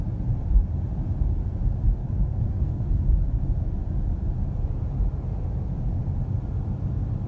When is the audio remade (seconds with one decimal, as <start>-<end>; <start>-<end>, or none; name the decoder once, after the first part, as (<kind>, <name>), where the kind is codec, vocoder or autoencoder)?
2.0-3.0 (codec, SNAC)